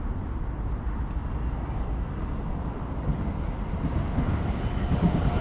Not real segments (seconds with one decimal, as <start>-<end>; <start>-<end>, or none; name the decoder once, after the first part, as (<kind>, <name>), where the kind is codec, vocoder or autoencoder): none